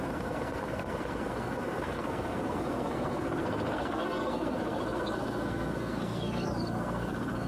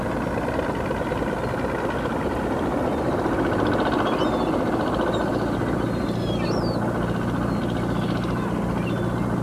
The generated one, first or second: first